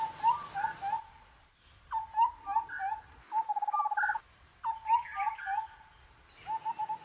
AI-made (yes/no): no